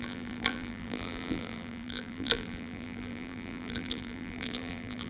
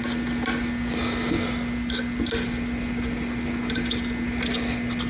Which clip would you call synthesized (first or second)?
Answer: first